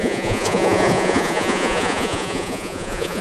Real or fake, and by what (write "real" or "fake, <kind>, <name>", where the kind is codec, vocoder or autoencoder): fake, vocoder, Vocos